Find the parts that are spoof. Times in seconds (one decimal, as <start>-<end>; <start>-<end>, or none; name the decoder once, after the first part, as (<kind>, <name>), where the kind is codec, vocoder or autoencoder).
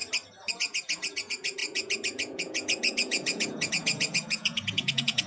0.5-5.3 (vocoder, Vocos)